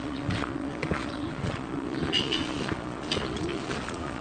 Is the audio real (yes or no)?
no